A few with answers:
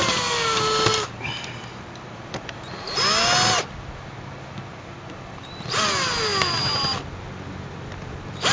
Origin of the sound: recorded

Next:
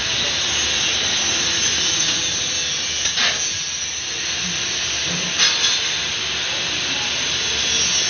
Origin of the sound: recorded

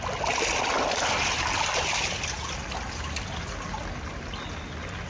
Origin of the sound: recorded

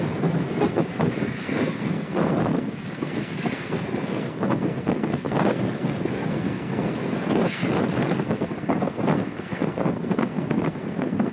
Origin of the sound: remade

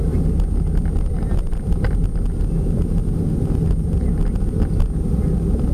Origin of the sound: recorded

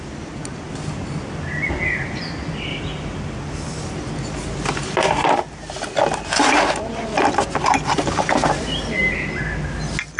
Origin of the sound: recorded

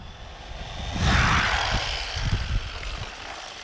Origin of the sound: recorded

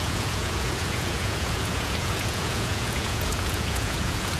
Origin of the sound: remade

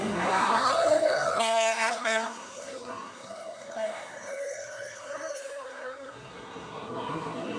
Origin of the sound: remade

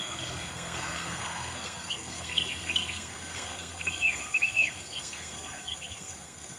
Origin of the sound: remade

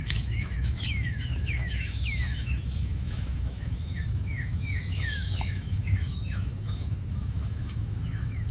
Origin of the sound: remade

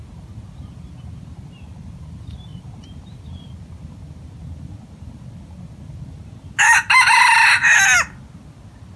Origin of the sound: recorded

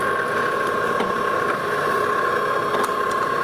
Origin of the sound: recorded